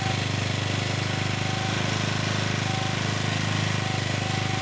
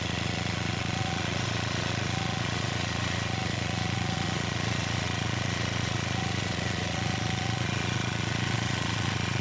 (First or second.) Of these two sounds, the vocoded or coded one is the second